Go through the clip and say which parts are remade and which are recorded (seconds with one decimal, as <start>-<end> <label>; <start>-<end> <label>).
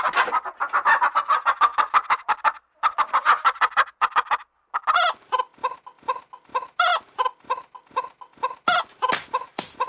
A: 0.0-9.9 recorded